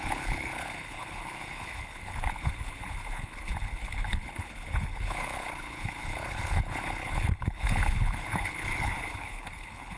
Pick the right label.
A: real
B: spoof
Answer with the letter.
B